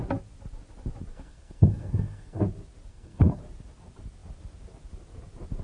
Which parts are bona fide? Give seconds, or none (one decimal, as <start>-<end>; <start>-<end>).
0.0-1.1; 2.4-2.9; 3.4-5.6